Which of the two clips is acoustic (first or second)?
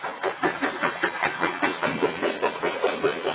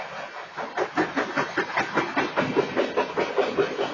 second